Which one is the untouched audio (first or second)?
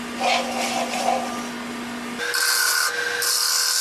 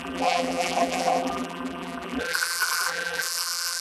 first